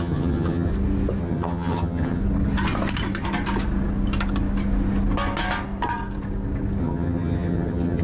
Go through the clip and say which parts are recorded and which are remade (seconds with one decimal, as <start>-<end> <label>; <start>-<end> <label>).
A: 0.0-0.7 remade; 0.7-1.2 recorded; 1.2-2.2 remade; 2.2-6.8 recorded; 6.8-8.0 remade